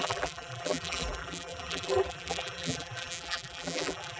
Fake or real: fake